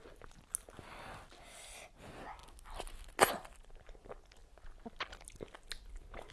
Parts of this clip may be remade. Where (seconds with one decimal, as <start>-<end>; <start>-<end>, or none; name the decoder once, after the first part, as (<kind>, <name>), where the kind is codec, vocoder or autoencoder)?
none